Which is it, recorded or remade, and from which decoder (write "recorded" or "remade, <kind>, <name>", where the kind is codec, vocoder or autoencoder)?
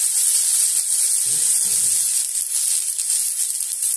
recorded